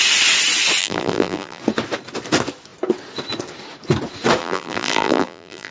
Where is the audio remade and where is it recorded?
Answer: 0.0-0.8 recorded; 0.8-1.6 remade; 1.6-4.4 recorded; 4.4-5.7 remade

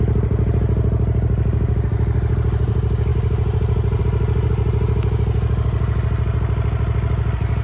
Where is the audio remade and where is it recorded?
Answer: 0.0-3.1 recorded; 3.1-4.0 remade; 4.0-7.6 recorded

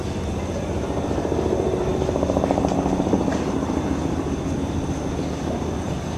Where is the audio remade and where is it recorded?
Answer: 0.0-1.9 remade; 1.9-3.6 recorded; 3.6-6.2 remade

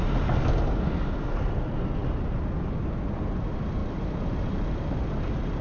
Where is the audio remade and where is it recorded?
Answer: 0.0-5.6 recorded

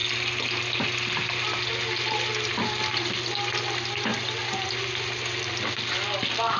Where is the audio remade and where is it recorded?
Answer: 0.0-4.1 recorded; 4.1-4.7 remade; 4.7-6.6 recorded